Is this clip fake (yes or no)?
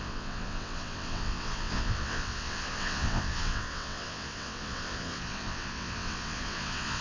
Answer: yes